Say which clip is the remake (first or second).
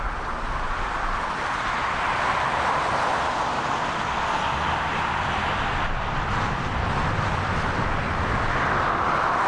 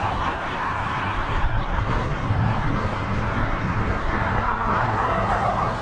second